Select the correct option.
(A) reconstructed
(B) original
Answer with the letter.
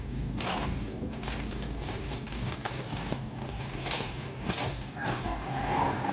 A